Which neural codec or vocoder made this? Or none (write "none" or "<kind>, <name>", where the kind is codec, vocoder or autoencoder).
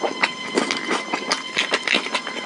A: none